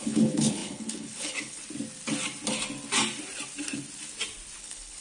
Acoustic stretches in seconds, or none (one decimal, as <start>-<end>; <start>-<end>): 1.6-4.6